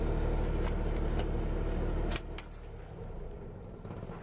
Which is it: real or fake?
real